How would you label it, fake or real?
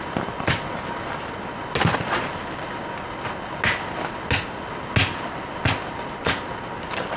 real